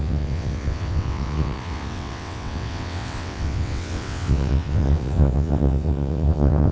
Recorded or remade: remade